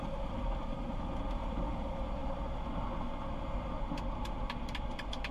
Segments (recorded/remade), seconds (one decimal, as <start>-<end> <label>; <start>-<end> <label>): 0.0-5.3 recorded

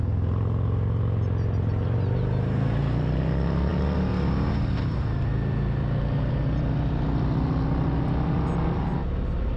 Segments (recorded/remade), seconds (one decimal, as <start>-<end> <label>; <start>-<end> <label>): 0.0-9.6 recorded

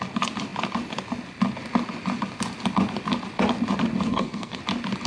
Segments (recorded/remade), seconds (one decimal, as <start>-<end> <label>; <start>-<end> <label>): 0.0-4.1 recorded; 4.1-4.6 remade; 4.6-5.1 recorded

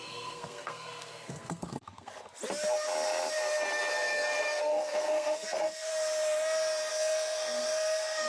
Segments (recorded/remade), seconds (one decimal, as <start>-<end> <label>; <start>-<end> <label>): 0.0-2.1 remade; 2.1-3.9 recorded; 3.9-5.9 remade; 5.9-6.9 recorded; 6.9-8.3 remade

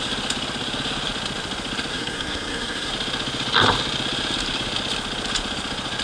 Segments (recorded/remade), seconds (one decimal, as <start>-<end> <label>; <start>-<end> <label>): 0.0-1.9 recorded; 1.9-2.9 remade; 2.9-6.0 recorded

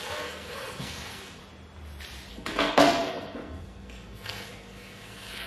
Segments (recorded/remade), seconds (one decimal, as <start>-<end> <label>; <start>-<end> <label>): 0.0-1.4 remade; 1.4-2.3 recorded; 2.3-5.5 remade

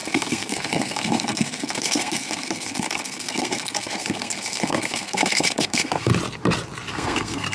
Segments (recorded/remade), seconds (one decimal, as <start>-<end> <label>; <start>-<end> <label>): 0.0-6.1 remade; 6.1-6.9 recorded; 6.9-7.5 remade